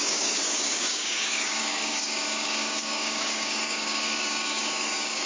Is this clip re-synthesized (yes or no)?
yes